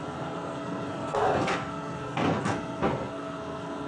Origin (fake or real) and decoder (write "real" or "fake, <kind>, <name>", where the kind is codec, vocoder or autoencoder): fake, codec, SNAC